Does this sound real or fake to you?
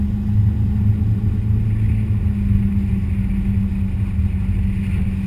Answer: real